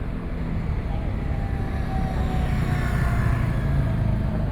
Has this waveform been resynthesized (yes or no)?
no